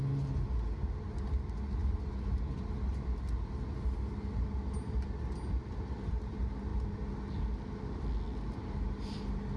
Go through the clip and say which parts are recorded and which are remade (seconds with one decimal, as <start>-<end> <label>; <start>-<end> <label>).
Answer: 0.0-9.6 recorded